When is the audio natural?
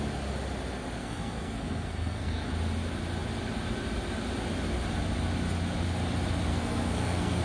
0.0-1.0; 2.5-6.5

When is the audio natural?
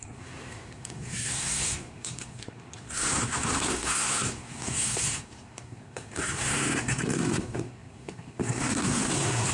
none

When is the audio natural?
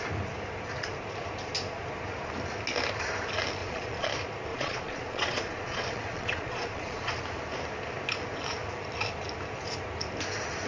0.0-3.6; 4.1-4.5; 7.2-10.7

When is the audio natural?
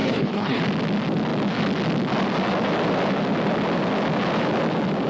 0.6-5.1